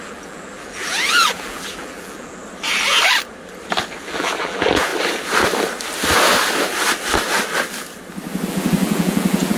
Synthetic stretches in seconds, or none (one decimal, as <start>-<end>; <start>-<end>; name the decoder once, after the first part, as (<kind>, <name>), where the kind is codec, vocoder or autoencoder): 0.0-2.4 (vocoder, BigVGAN v2); 4.1-4.9; 8.5-9.6